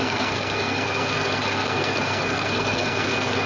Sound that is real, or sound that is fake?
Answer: fake